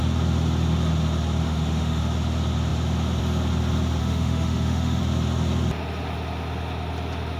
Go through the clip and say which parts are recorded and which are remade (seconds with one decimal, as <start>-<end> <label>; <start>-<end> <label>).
0.0-1.4 recorded; 1.4-2.0 remade; 2.0-4.0 recorded; 4.0-5.0 remade; 5.0-7.4 recorded